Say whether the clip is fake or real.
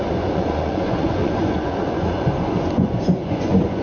fake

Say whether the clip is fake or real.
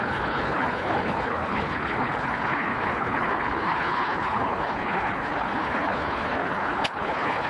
fake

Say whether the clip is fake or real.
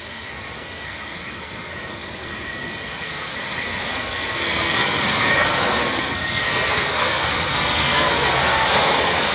fake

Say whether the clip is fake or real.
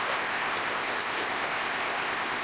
fake